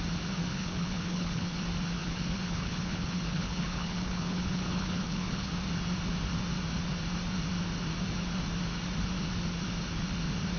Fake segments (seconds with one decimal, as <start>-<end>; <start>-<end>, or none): 0.5-1.6; 2.0-5.5